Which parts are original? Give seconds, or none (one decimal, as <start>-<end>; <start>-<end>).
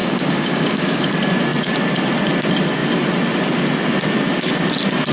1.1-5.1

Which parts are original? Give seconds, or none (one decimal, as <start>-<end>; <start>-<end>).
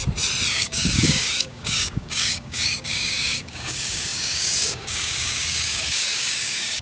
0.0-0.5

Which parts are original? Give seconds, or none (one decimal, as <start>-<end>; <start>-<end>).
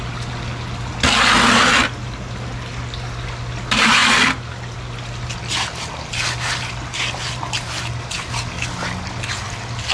0.0-9.9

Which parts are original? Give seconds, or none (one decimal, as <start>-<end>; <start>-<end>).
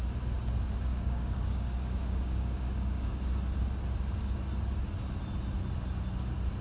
0.0-0.9; 3.3-6.6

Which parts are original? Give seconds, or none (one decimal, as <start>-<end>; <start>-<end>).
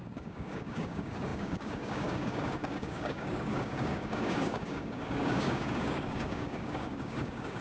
none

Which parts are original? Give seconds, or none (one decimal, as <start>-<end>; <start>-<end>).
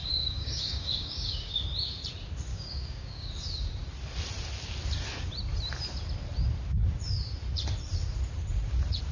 1.6-2.5; 3.3-9.1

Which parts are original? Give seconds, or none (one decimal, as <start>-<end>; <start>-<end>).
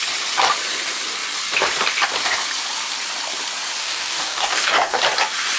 0.0-3.8; 5.0-5.6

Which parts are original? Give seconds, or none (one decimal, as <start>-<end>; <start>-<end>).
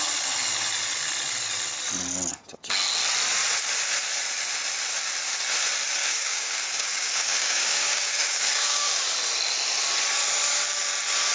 0.0-6.0; 9.0-11.3